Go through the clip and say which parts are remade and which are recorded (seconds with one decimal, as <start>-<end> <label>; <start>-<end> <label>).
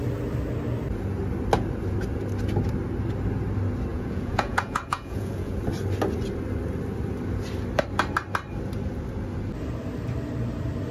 0.0-3.9 recorded; 3.9-5.5 remade; 5.5-10.9 recorded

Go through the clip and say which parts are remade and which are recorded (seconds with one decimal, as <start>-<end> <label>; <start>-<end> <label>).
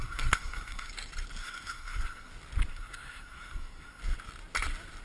0.0-0.9 remade; 0.9-1.4 recorded; 1.4-2.3 remade; 2.3-2.7 recorded; 2.7-4.0 remade; 4.0-5.0 recorded